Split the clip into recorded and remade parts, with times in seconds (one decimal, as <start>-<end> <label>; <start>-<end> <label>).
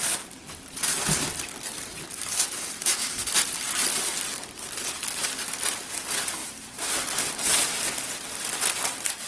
0.0-2.8 recorded; 2.8-3.3 remade; 3.3-9.3 recorded